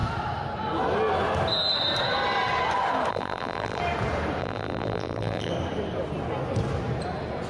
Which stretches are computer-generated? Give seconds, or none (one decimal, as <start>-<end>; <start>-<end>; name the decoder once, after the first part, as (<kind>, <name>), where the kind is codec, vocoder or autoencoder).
3.1-3.8 (vocoder, BigVGAN v2); 4.4-5.5